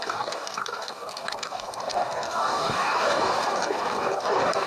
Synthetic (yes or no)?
yes